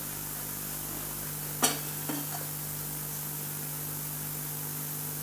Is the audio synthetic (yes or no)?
no